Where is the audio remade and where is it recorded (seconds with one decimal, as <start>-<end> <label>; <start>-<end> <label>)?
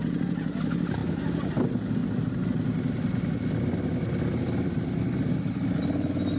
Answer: 0.0-6.4 recorded